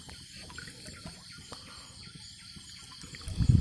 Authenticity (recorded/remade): recorded